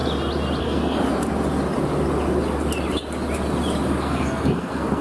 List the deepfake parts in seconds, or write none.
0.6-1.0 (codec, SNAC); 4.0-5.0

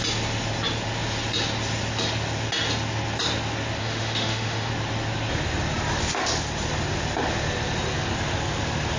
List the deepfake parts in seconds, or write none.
3.8-4.7 (autoencoder, DAC-VAE)